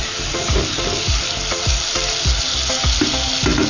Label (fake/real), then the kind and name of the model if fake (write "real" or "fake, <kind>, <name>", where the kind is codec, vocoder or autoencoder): real